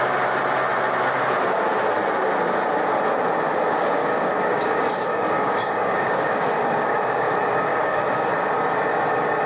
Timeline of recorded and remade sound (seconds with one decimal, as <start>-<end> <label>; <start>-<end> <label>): 0.0-4.0 recorded; 4.0-7.3 remade; 7.3-7.7 recorded; 7.7-8.3 remade; 8.3-9.5 recorded